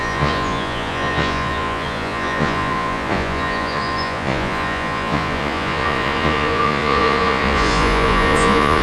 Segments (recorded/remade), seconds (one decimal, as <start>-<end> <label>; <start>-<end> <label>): 0.0-8.8 remade